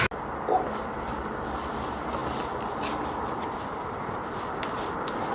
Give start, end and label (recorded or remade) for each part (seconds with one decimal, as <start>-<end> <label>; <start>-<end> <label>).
0.0-5.3 recorded